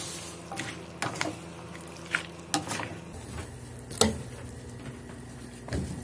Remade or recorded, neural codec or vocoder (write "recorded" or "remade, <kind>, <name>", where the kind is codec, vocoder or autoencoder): recorded